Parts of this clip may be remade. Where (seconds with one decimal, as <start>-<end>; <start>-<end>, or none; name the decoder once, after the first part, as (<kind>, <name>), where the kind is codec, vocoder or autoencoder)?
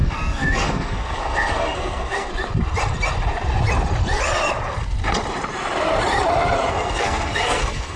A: 0.0-2.3 (codec, SNAC); 6.7-8.0